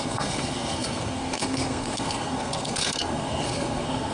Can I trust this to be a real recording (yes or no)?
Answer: no